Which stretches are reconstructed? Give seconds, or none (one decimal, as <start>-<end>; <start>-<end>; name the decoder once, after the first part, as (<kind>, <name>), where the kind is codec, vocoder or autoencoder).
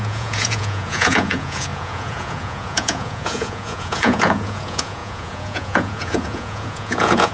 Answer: 0.0-7.3 (vocoder, Vocos)